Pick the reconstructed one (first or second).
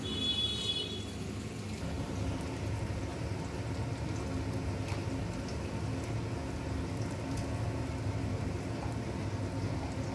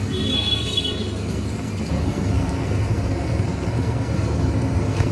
second